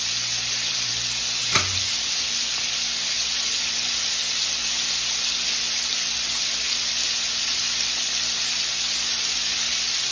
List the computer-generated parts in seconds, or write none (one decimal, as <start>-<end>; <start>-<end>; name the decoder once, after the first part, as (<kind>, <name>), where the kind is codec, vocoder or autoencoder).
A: none